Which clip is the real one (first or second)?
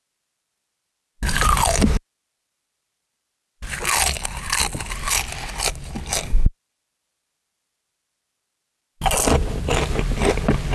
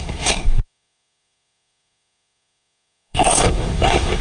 first